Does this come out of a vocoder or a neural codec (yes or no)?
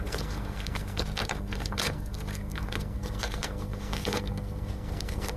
yes